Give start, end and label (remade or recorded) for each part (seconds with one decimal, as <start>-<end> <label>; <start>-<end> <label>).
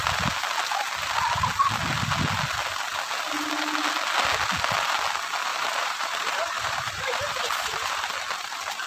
0.0-5.5 recorded; 5.5-8.1 remade; 8.1-8.9 recorded